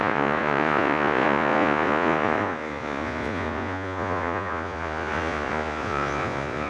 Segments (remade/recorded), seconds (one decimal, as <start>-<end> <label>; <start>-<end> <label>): 0.0-6.7 remade